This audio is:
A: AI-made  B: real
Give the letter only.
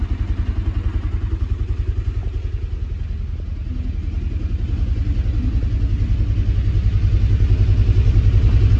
B